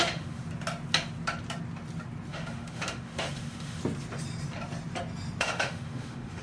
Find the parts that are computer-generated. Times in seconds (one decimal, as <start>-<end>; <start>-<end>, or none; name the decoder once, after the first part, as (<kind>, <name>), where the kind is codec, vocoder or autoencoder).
0.0-0.4 (autoencoder, DAC-VAE); 2.3-3.8; 5.4-6.4